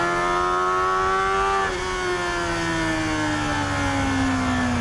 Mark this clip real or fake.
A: real